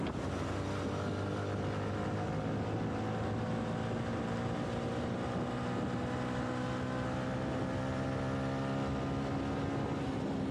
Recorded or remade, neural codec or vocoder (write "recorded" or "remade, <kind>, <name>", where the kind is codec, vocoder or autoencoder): recorded